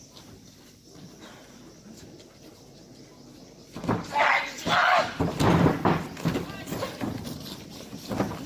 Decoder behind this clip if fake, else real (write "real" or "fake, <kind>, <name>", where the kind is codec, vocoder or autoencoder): real